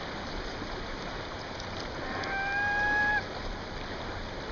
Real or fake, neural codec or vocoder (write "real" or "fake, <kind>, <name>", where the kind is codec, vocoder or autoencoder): real